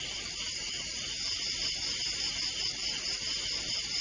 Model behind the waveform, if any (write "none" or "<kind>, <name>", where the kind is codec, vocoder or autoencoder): none